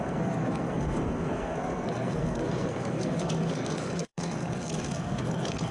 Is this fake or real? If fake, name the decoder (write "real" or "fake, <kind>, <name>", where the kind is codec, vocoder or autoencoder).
fake, codec, SNAC